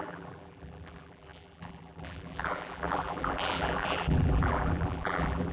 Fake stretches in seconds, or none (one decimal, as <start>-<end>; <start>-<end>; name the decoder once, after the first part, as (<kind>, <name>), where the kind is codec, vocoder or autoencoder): 0.0-5.5 (vocoder, BigVGAN v2)